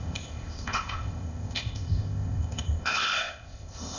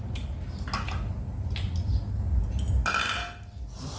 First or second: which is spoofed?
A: first